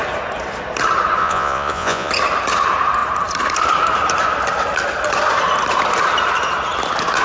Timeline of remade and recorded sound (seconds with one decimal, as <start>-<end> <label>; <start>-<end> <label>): 0.0-1.2 recorded; 1.2-2.1 remade; 2.1-7.2 recorded